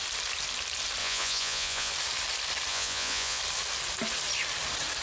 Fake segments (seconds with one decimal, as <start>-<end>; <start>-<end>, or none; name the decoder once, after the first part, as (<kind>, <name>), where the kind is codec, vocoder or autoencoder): 1.0-1.9 (vocoder, Vocos); 2.7-3.4